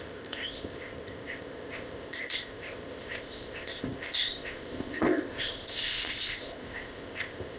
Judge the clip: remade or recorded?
remade